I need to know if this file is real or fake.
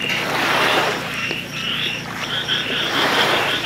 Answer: fake